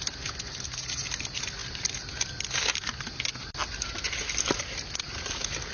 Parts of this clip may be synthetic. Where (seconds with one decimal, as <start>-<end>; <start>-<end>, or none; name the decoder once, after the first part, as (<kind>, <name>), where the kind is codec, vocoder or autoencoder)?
none